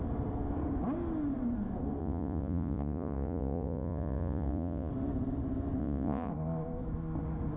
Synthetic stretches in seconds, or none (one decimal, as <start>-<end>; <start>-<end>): 2.0-4.9; 5.8-6.3

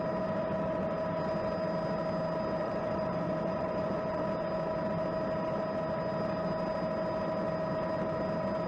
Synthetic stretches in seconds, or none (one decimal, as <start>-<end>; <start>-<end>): 2.6-4.2

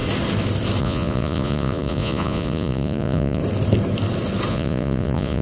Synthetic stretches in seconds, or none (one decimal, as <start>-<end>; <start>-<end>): 0.8-3.4; 4.5-5.4